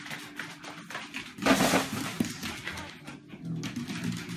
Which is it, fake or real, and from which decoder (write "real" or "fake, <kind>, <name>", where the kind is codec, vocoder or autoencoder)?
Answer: real